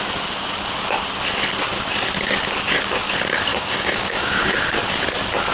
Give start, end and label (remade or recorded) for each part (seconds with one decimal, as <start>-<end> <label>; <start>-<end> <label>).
0.0-3.5 recorded; 3.5-4.6 remade; 4.6-5.5 recorded